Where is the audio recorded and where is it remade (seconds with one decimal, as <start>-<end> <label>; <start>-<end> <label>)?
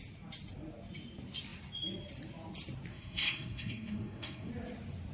0.0-2.9 recorded; 2.9-4.5 remade; 4.5-5.1 recorded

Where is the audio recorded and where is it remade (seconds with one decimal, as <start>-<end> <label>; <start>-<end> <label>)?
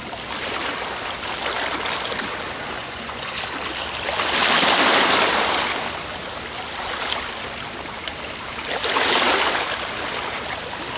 0.0-2.8 recorded; 2.8-3.4 remade; 3.4-11.0 recorded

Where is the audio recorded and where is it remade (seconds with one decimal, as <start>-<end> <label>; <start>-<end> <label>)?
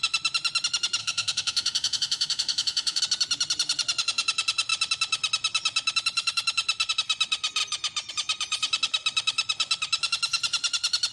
0.0-1.0 recorded; 1.0-3.0 remade; 3.0-11.1 recorded